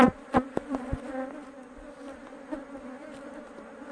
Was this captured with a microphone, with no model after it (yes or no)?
no